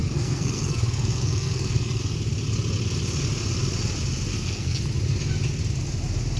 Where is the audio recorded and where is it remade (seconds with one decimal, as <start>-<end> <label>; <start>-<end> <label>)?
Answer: 0.0-2.0 remade; 2.0-4.3 recorded; 4.3-4.8 remade; 4.8-6.4 recorded